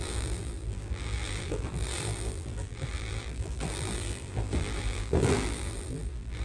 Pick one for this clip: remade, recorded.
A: remade